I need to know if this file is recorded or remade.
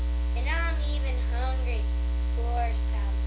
recorded